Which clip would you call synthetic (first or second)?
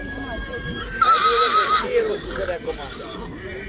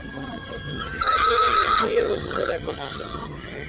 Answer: second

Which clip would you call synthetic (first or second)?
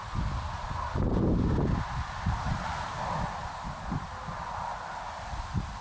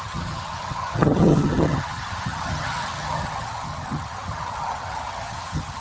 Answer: second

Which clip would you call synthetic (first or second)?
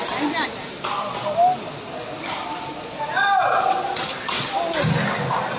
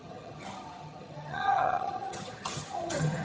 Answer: second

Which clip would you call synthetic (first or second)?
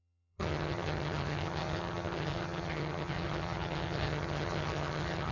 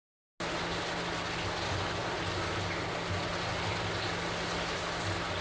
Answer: first